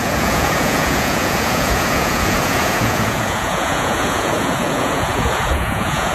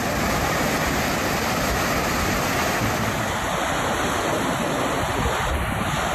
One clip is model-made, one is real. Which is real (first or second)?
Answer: second